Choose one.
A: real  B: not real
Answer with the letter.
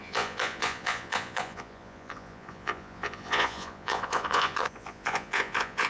B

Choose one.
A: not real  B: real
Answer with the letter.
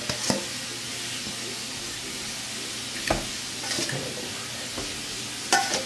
B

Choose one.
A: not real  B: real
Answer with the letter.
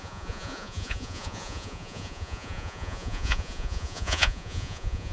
A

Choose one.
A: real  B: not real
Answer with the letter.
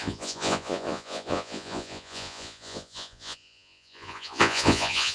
B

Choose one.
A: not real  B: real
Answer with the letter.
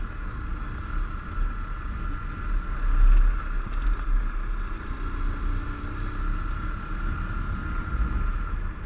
B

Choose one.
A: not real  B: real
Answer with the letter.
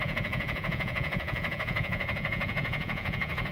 A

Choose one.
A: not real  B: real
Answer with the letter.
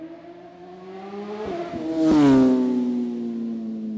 B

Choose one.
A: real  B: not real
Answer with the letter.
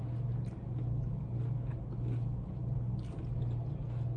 A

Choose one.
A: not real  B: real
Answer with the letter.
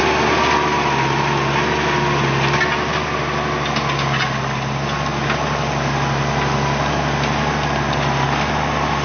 B